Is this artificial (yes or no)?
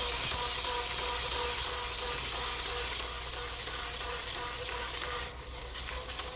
no